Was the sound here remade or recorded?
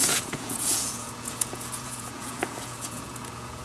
remade